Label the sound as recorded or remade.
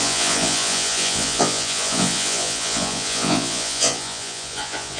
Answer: remade